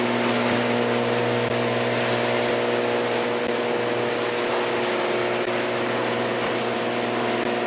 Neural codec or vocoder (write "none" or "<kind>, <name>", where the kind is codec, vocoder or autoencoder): none